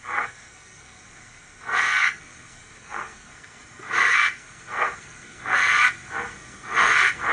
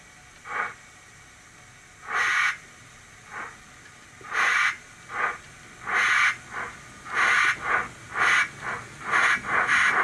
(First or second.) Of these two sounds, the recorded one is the second